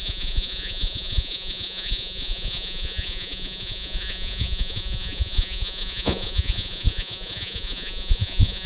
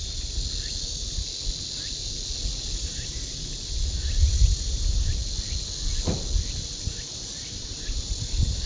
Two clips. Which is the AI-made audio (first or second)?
first